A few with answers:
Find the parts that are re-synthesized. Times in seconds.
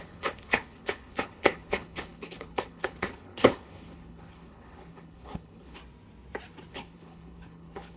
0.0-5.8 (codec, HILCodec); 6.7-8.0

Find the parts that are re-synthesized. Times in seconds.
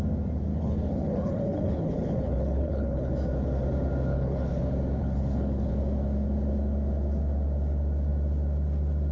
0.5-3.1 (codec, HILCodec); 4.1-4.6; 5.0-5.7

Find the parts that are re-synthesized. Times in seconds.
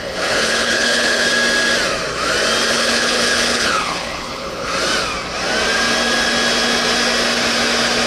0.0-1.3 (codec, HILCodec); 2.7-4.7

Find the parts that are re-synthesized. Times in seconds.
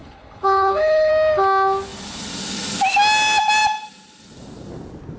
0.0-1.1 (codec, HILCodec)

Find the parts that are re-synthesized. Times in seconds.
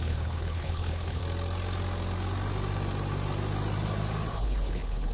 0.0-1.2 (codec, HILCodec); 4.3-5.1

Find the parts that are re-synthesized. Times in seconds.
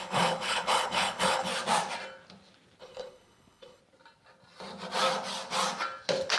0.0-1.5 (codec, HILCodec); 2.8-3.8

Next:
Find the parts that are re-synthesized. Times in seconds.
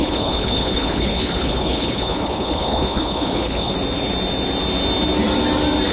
0.0-3.7 (codec, HILCodec)